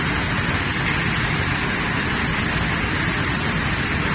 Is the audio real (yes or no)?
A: yes